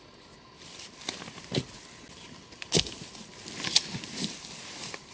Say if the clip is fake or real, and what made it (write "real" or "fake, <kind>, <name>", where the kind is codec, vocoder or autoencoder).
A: real